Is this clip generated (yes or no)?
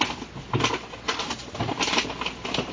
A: no